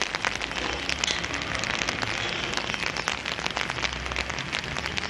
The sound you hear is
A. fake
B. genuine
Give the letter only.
B